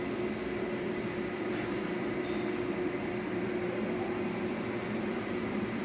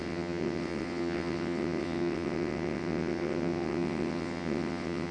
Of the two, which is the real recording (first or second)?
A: first